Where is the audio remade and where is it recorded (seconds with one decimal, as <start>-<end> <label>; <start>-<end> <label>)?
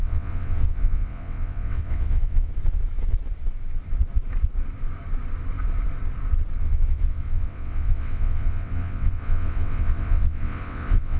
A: 0.0-2.5 remade; 2.5-6.6 recorded; 6.6-11.2 remade